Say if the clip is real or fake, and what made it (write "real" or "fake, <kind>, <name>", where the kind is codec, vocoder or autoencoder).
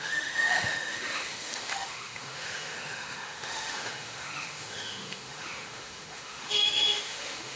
fake, autoencoder, DAC-VAE